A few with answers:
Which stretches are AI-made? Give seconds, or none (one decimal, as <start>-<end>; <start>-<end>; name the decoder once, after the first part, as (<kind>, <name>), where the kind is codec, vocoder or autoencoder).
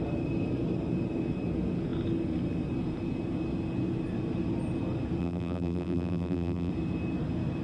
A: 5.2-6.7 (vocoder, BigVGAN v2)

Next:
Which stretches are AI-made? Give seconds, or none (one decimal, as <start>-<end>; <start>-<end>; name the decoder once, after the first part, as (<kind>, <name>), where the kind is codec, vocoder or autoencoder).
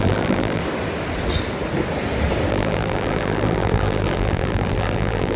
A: 0.0-0.6 (vocoder, BigVGAN v2); 2.5-5.4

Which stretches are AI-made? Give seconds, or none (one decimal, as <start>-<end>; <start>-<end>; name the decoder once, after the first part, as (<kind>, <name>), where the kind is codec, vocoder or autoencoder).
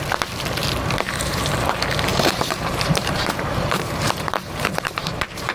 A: 0.6-1.4 (vocoder, BigVGAN v2); 2.1-5.5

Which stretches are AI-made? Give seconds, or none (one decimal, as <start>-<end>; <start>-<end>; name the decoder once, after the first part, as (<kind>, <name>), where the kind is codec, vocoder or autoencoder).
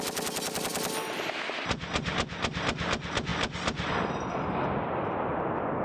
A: none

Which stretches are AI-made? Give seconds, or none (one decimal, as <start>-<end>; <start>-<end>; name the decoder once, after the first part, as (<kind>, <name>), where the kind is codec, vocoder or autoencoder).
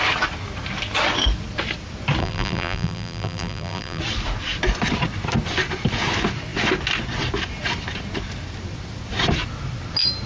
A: 2.2-4.0 (vocoder, BigVGAN v2)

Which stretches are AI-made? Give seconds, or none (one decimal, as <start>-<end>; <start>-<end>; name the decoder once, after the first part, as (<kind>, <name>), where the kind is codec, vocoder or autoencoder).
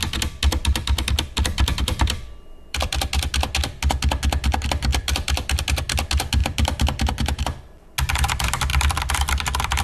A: 0.6-3.0 (vocoder, BigVGAN v2); 4.9-5.6; 6.4-7.4; 8.7-9.8